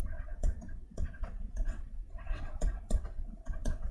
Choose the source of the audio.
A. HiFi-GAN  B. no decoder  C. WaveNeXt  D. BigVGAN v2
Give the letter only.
C